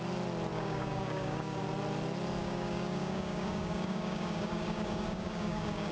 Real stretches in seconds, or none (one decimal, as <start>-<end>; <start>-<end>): 0.0-0.5; 1.6-2.4